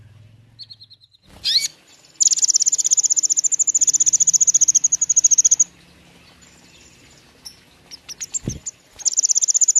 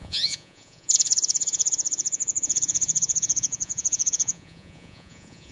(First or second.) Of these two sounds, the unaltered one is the first